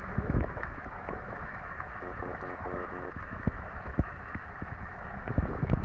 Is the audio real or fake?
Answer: fake